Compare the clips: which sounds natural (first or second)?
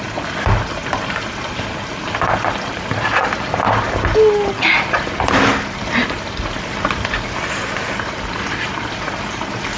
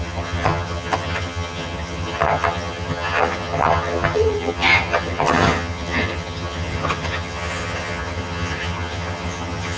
first